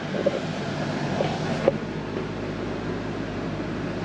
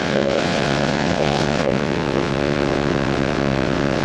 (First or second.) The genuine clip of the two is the first